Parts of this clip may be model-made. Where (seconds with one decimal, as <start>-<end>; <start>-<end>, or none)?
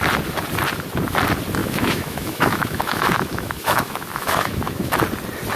1.6-5.0